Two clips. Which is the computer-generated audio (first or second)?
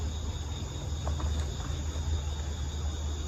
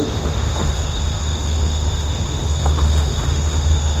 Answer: second